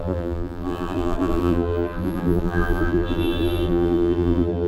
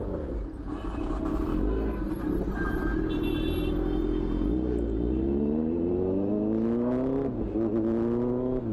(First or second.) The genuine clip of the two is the second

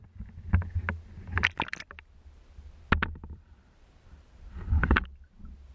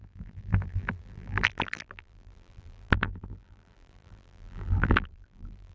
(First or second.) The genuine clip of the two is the first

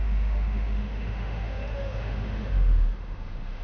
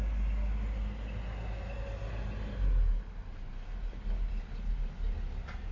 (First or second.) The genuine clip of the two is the second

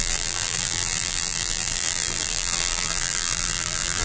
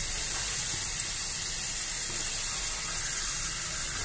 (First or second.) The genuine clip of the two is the second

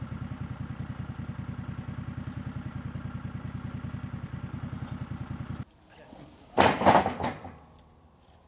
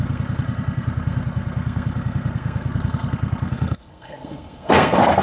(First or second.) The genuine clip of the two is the first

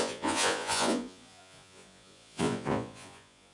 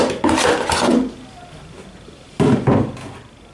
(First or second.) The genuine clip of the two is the second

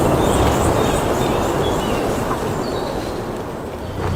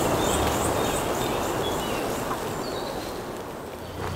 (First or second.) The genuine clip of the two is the second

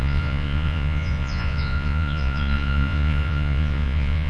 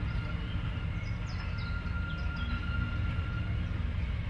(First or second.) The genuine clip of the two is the second